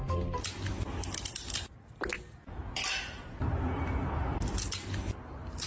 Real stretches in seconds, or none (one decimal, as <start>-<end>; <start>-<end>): 0.0-1.3; 2.1-2.6; 4.5-5.7